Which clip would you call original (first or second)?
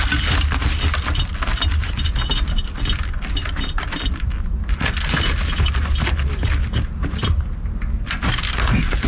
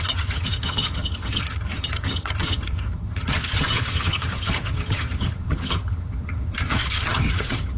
first